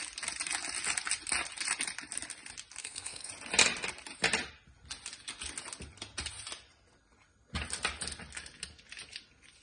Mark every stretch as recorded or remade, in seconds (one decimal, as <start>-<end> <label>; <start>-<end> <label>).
0.0-2.8 recorded; 2.8-3.3 remade; 3.3-9.6 recorded